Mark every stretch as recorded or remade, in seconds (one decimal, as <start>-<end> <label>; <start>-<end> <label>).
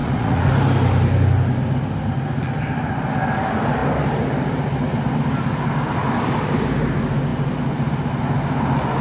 0.0-0.5 remade; 0.5-9.0 recorded